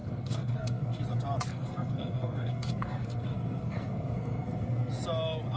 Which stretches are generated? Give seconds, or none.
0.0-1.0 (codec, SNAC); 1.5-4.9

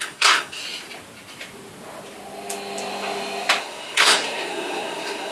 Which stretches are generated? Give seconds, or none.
0.0-0.6 (codec, SNAC); 3.6-5.3